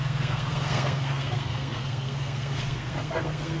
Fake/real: fake